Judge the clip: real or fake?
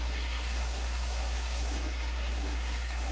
fake